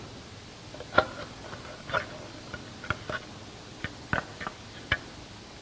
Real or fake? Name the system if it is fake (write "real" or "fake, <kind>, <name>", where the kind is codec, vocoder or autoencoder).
real